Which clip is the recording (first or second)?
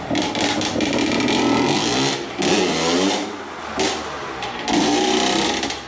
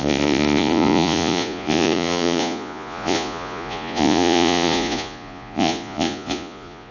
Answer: first